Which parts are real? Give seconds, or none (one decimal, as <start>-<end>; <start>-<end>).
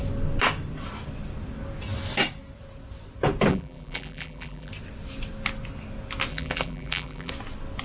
0.0-3.5; 4.7-6.3; 7.3-7.8